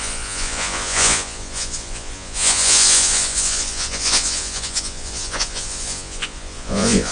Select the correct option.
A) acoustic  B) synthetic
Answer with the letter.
B